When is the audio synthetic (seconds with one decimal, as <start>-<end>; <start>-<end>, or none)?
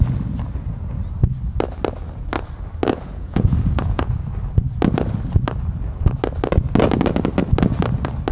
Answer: 2.9-4.2